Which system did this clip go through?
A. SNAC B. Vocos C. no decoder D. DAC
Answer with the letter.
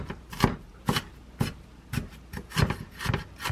C